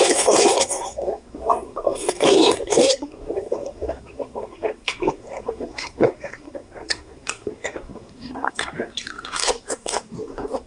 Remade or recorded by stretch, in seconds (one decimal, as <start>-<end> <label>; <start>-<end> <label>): 0.0-10.7 remade